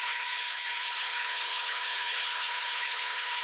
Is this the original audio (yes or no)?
no